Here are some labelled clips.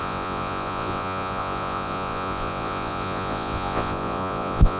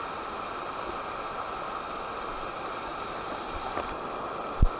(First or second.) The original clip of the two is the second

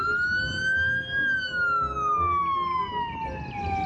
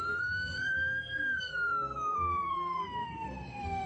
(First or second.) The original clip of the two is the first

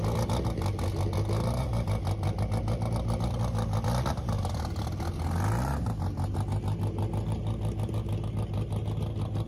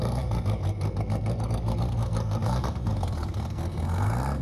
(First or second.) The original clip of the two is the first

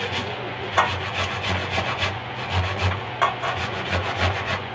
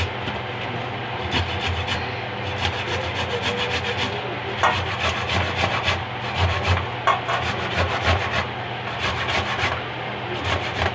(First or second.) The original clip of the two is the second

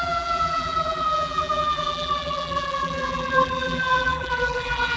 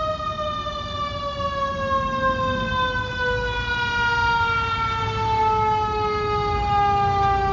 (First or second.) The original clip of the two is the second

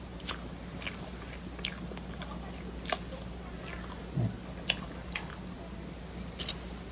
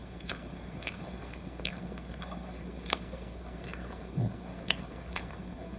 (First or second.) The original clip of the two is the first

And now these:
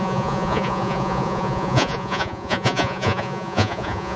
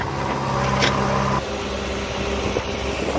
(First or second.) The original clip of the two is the second